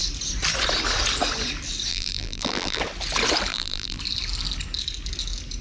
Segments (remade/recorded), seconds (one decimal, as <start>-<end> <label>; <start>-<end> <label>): 0.0-1.9 recorded; 1.9-2.8 remade; 2.8-3.5 recorded; 3.5-4.0 remade; 4.0-5.6 recorded